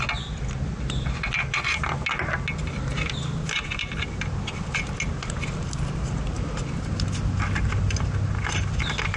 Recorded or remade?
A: recorded